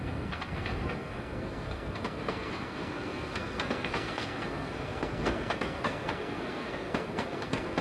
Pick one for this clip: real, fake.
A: fake